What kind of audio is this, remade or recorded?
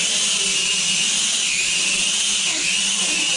recorded